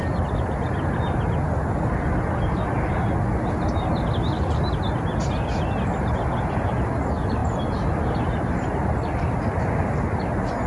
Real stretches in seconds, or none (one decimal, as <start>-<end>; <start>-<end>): 0.0-10.7